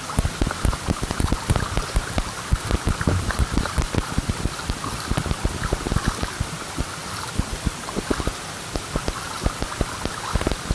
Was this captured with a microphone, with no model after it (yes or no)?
no